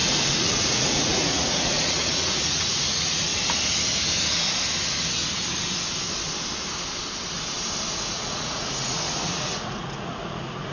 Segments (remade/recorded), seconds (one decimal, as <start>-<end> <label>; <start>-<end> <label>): 0.0-3.3 remade; 3.3-7.9 recorded; 7.9-10.7 remade